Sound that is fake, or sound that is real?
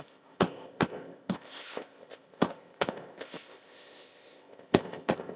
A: fake